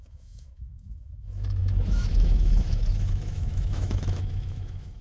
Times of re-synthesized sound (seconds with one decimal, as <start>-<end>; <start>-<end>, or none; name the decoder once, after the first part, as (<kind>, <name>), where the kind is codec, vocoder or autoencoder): 0.0-5.0 (autoencoder, DAC-VAE)